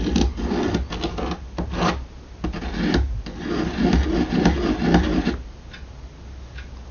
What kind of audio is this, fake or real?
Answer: real